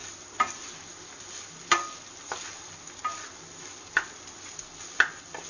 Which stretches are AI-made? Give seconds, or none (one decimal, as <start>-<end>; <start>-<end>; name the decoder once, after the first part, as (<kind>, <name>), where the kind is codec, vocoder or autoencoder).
none